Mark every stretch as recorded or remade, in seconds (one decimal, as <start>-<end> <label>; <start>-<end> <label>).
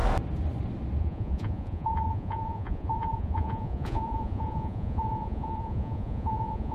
0.0-1.0 recorded; 1.0-6.7 remade